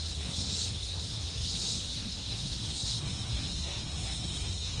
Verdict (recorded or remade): remade